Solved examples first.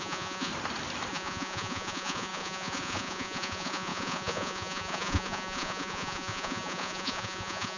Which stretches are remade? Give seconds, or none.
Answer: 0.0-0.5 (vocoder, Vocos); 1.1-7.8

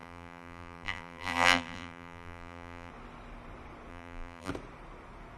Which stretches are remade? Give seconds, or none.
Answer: 0.0-2.9 (vocoder, BigVGAN v2); 3.9-4.5

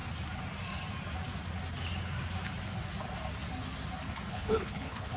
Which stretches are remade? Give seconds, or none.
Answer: 4.3-5.2 (codec, HILCodec)

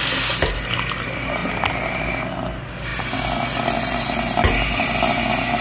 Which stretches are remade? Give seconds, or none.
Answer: none

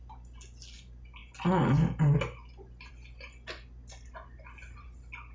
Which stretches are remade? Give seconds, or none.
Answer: none